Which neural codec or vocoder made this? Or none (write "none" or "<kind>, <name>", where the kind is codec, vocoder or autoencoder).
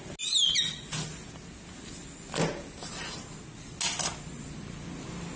none